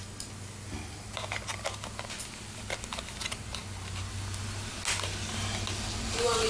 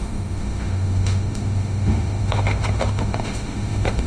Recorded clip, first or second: first